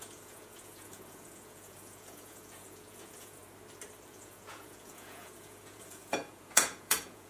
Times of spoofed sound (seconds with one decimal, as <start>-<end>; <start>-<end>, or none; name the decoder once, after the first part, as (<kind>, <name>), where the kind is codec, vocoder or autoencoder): 0.0-3.4 (vocoder, Vocos); 4.1-7.3